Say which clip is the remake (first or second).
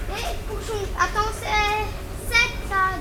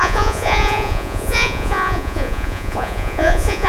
second